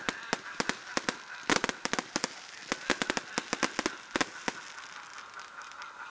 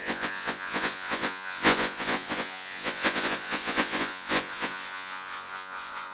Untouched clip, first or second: first